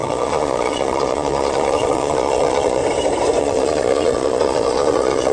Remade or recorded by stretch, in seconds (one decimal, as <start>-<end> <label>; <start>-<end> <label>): 0.0-2.8 remade; 2.8-3.4 recorded; 3.4-5.3 remade